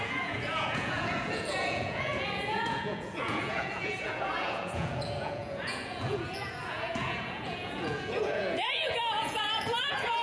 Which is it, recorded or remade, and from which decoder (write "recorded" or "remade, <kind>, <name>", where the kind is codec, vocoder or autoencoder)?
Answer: remade, vocoder, Vocos